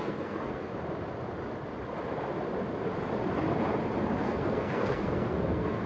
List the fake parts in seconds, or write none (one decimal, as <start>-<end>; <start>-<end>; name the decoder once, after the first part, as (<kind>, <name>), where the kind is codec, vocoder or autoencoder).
0.0-0.7 (codec, SNAC); 4.2-5.9